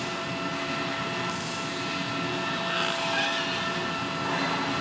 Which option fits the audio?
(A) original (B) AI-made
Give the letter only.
A